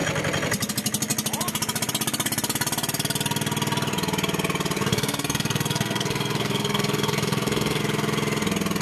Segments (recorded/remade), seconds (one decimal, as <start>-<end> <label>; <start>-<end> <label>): 0.0-4.9 recorded; 4.9-7.8 remade; 7.8-8.8 recorded